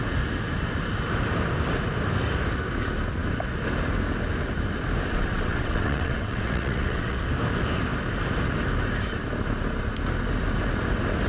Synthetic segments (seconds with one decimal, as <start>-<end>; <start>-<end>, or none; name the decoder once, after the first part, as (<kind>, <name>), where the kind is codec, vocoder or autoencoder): 5.1-7.2 (vocoder, WaveNeXt)